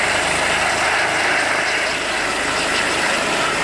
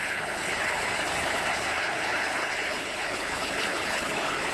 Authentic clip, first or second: first